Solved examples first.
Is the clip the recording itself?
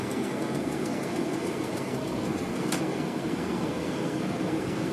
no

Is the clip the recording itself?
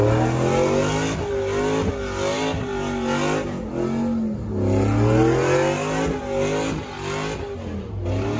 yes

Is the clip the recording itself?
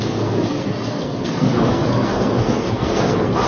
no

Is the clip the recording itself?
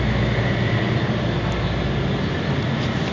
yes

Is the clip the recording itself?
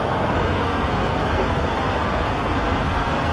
no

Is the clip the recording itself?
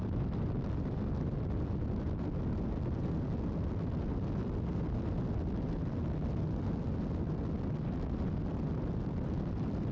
yes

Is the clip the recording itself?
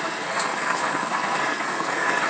no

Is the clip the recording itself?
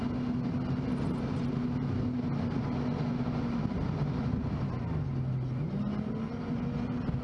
yes